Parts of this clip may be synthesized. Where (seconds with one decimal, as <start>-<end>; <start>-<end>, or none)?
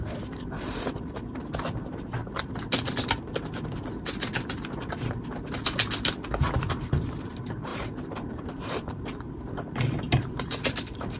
0.0-2.2; 6.7-11.2